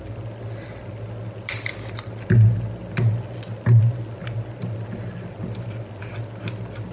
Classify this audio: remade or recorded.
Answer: recorded